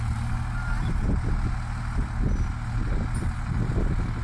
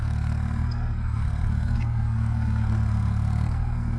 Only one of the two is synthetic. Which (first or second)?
second